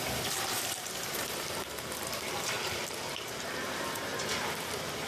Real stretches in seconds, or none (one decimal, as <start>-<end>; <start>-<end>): 4.1-5.1